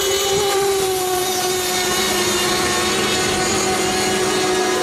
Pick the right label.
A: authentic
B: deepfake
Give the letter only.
A